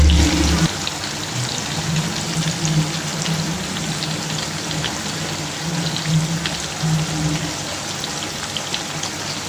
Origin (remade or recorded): recorded